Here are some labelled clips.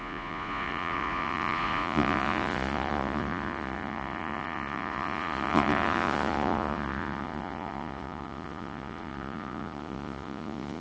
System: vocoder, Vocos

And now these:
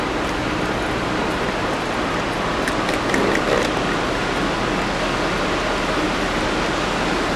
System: none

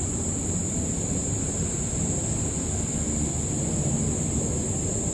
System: none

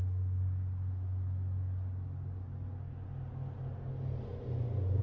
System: none